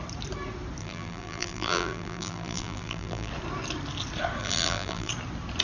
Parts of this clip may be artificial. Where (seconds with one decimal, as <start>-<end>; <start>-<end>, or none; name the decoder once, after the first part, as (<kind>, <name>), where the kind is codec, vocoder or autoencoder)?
0.8-3.3 (vocoder, BigVGAN v2); 4.4-5.1